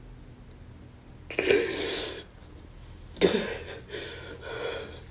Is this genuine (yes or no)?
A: yes